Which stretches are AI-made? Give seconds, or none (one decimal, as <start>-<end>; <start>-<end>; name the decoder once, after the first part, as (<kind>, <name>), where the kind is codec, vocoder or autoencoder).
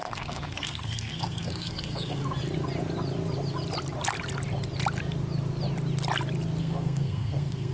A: 0.0-2.2 (codec, SNAC); 6.6-7.7